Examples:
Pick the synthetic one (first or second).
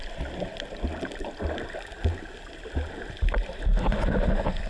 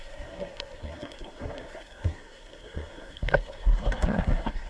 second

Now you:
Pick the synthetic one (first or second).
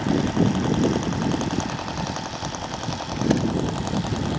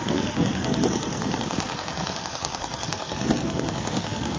second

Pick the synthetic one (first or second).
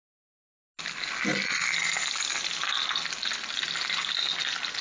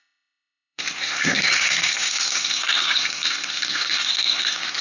second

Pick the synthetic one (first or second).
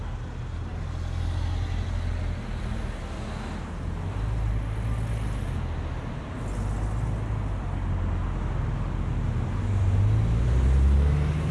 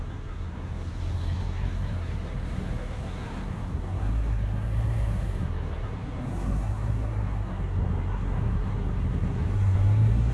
second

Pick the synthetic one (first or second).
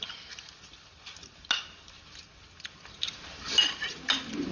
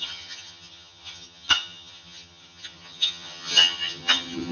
second